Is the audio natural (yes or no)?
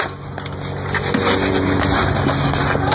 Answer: yes